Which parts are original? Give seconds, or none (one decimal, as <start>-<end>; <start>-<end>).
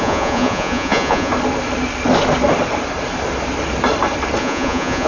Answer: 1.3-4.4